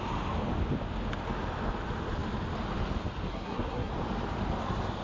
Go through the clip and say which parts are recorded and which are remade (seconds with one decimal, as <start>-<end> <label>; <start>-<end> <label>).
0.0-3.3 recorded; 3.3-3.9 remade; 3.9-5.0 recorded